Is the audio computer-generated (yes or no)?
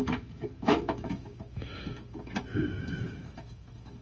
yes